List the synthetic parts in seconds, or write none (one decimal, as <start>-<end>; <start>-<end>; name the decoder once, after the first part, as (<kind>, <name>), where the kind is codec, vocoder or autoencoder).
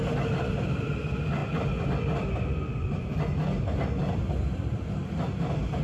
none